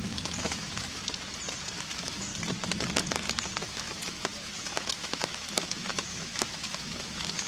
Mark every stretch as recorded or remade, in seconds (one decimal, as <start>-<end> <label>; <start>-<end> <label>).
0.0-1.0 remade; 1.0-1.8 recorded; 1.8-2.3 remade; 2.3-3.6 recorded; 3.6-7.5 remade